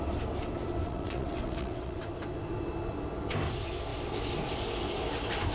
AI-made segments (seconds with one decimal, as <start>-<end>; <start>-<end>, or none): 0.8-2.0